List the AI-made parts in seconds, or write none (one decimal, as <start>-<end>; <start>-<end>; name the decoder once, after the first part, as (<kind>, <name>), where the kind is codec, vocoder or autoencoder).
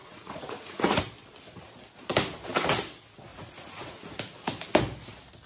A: 0.0-1.0 (vocoder, Vocos); 3.3-4.1